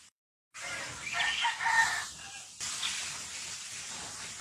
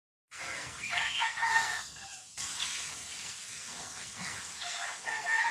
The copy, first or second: second